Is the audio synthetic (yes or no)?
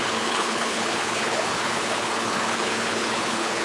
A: yes